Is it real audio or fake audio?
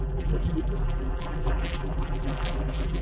fake